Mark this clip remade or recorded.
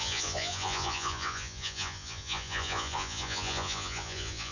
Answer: remade